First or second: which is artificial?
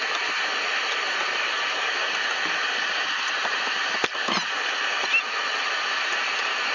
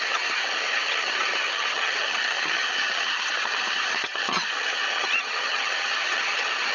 second